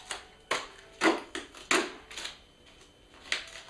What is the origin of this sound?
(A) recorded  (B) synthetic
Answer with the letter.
A